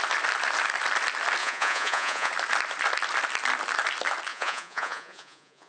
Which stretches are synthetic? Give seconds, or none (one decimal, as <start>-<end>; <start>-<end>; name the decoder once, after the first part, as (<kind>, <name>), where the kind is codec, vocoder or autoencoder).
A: 1.4-2.3 (vocoder, Vocos); 4.3-5.7